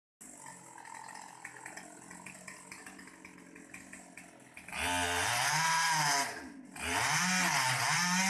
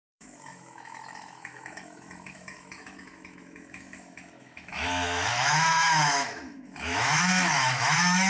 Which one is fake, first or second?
second